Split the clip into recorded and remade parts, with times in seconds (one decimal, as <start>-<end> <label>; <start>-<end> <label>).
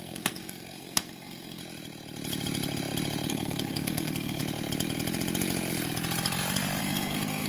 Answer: 0.0-1.6 remade; 1.6-3.3 recorded; 3.3-4.4 remade; 4.4-6.8 recorded; 6.8-7.5 remade